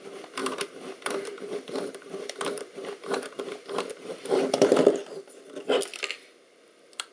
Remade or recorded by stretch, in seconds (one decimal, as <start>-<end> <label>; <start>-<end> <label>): 0.0-0.4 recorded; 0.4-4.7 remade; 4.7-7.1 recorded